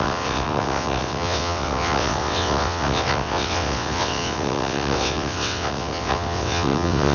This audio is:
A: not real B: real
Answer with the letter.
A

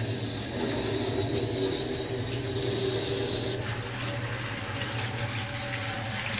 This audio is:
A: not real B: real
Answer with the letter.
B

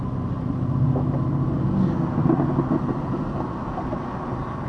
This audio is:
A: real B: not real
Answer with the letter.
A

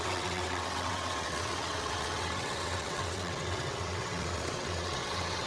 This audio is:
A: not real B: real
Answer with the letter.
A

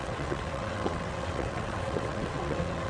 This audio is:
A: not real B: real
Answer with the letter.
A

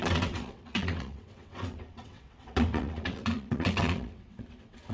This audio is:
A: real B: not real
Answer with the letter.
B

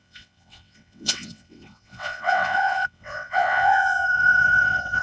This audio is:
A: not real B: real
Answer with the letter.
A